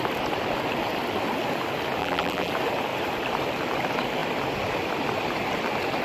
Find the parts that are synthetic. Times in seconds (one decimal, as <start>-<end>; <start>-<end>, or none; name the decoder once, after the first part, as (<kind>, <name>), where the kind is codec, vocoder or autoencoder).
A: 2.0-2.5 (vocoder, BigVGAN v2)